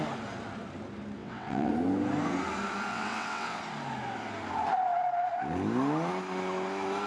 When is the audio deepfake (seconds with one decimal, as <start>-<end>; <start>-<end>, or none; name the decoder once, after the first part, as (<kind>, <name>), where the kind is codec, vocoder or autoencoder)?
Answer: 1.2-1.7 (vocoder, WaveNeXt); 2.9-3.6